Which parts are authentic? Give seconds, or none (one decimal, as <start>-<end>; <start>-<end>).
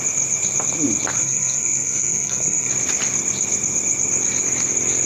0.0-1.2; 2.7-5.1